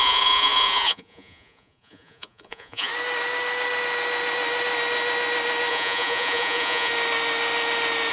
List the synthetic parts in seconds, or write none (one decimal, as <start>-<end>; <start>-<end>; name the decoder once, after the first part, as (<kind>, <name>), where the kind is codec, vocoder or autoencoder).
0.0-2.9 (vocoder, Vocos); 5.7-6.9